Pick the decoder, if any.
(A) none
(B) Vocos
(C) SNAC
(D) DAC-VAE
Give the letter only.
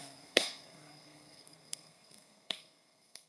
C